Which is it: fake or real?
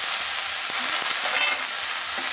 real